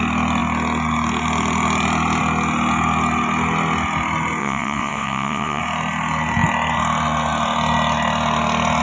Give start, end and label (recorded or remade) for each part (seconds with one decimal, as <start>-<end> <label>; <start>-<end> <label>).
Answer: 0.0-4.4 recorded; 4.4-5.6 remade; 5.6-8.8 recorded